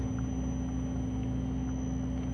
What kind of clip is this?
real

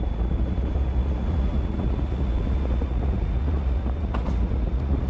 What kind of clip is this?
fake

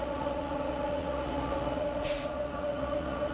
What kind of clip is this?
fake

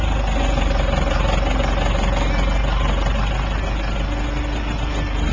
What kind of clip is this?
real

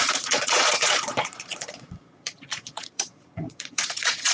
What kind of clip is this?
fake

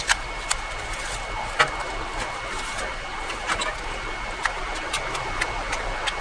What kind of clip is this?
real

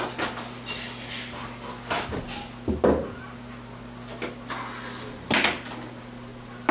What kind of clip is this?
real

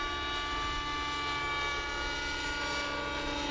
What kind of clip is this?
real